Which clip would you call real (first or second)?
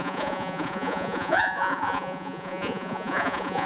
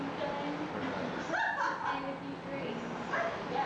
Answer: second